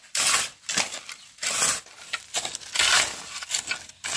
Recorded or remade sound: recorded